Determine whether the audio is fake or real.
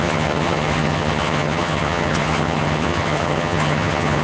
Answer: fake